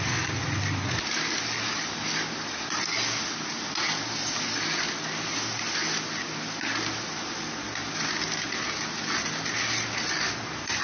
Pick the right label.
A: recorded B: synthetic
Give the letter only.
A